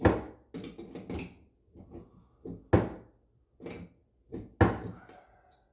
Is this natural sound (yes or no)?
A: yes